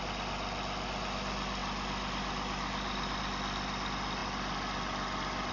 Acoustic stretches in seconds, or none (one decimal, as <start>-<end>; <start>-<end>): 0.0-5.5